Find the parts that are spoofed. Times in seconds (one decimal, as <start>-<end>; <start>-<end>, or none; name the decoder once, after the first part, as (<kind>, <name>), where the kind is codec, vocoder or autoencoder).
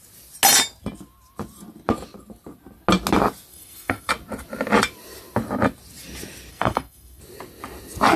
3.5-4.1 (codec, SNAC); 6.5-7.2